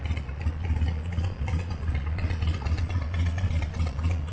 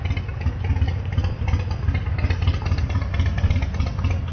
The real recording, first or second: second